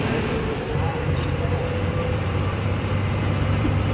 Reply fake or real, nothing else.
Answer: fake